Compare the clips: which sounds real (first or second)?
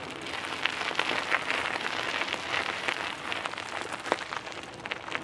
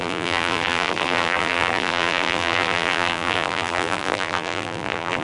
first